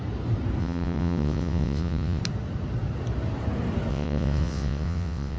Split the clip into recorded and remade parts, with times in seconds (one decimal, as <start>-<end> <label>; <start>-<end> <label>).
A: 0.0-0.6 recorded; 0.6-2.2 remade; 2.2-3.9 recorded; 3.9-5.4 remade